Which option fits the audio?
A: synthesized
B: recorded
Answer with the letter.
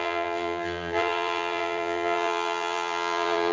A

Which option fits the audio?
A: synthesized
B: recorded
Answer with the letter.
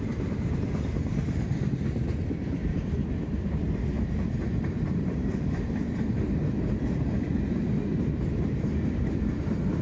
A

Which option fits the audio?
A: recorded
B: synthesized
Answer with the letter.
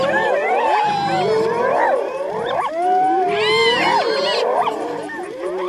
B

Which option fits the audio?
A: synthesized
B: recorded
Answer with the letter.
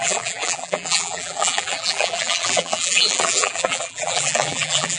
A